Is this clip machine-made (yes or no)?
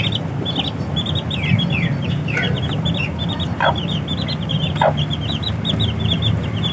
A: no